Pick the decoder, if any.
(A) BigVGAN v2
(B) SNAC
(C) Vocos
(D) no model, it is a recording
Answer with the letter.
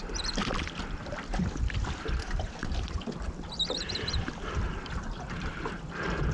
A